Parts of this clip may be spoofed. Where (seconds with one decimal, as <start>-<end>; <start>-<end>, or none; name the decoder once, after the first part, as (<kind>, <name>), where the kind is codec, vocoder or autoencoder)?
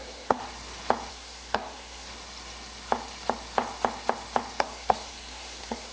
0.0-0.4 (codec, SNAC); 1.1-2.1; 4.6-5.9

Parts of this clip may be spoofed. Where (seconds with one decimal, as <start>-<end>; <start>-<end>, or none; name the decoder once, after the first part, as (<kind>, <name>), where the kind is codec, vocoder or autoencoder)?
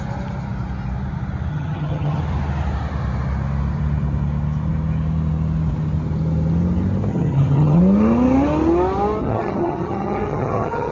1.5-2.2 (vocoder, HiFi-GAN); 7.1-7.8; 9.2-10.9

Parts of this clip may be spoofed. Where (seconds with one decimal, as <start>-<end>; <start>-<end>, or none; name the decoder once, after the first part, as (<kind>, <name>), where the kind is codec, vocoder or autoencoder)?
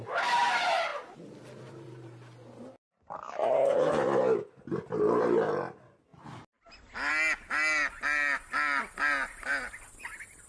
none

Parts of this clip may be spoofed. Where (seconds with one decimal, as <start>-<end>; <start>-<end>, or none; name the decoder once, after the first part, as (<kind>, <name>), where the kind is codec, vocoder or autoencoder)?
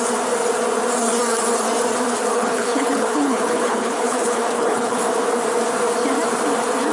2.3-5.0 (codec, HILCodec)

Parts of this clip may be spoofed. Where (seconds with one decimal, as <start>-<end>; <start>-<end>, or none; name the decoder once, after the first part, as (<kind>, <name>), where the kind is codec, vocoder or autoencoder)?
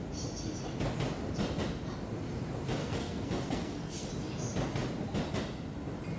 2.8-4.1 (codec, SNAC)